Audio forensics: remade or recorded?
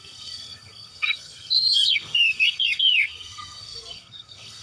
remade